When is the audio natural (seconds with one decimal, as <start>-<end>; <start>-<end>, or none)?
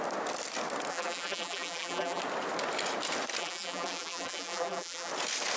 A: 0.0-0.9; 2.2-3.4; 5.1-5.6